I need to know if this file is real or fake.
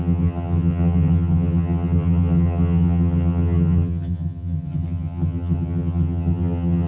fake